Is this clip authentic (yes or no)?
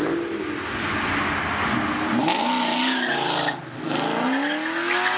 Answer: yes